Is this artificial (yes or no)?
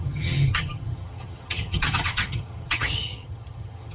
yes